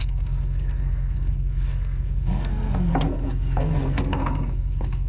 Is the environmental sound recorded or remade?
remade